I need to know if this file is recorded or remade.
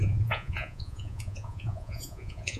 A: remade